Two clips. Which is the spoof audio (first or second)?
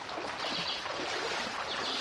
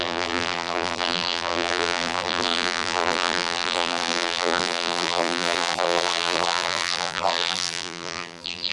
second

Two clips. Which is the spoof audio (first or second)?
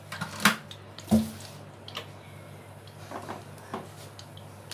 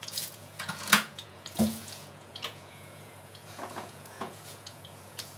second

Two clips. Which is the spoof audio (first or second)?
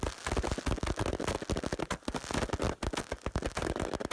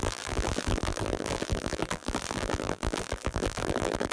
second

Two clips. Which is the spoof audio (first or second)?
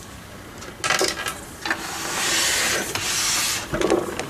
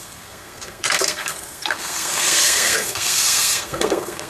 second